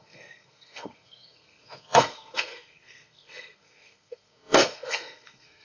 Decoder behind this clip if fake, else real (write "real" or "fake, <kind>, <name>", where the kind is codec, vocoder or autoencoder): fake, codec, SNAC